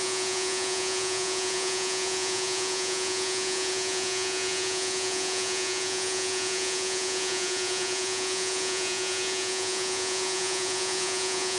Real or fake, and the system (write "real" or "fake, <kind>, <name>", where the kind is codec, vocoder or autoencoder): fake, vocoder, Vocos